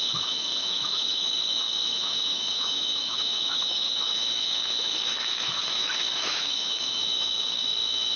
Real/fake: fake